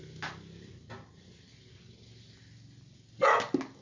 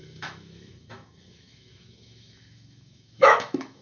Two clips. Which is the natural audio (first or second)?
first